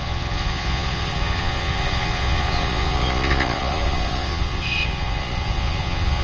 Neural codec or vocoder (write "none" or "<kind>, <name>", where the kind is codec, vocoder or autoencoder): vocoder, Vocos